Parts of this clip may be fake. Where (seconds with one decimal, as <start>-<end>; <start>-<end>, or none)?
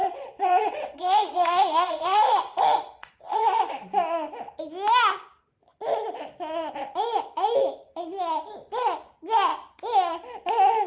0.0-3.7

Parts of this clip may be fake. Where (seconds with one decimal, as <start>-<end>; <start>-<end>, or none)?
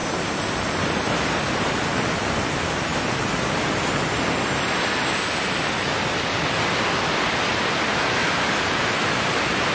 0.0-1.7; 8.2-9.7